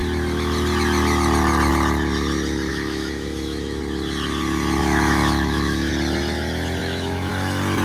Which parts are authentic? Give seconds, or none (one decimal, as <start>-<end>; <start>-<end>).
0.0-2.7; 3.8-4.8; 5.9-6.8; 7.3-7.8